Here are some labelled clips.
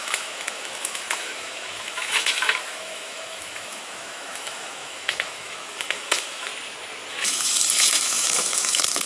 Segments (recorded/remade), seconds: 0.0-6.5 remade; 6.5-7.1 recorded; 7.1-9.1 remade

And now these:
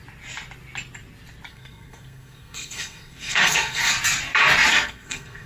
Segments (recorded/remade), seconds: 0.0-1.5 recorded; 1.5-3.9 remade; 3.9-4.7 recorded; 4.7-5.5 remade

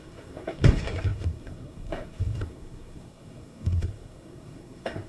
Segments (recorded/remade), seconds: 0.0-5.1 remade

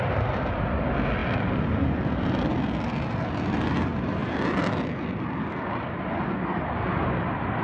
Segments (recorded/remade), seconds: 0.0-7.6 recorded

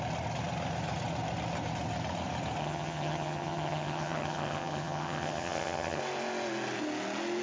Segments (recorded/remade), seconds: 0.0-2.6 recorded; 2.6-6.0 remade; 6.0-7.4 recorded

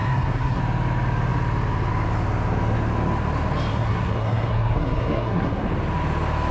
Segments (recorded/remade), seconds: 0.0-0.6 remade; 0.6-3.7 recorded; 3.7-5.7 remade; 5.7-6.5 recorded

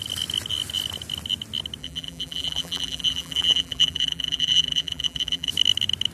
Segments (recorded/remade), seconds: 0.0-1.8 recorded; 1.8-5.5 remade; 5.5-6.1 recorded